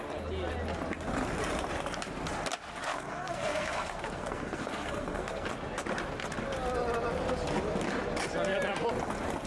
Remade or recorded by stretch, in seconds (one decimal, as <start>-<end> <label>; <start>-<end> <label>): 0.0-2.8 recorded; 2.8-5.5 remade; 5.5-9.5 recorded